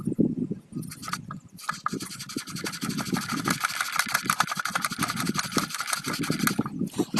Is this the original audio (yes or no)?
yes